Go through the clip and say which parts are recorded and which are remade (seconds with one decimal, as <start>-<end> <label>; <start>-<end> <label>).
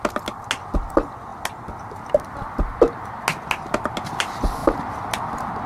0.0-5.7 recorded